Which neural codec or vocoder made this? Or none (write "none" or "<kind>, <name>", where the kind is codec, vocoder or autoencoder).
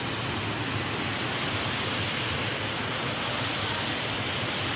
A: none